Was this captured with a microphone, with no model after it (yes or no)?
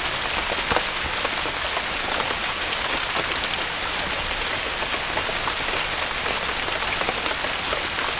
yes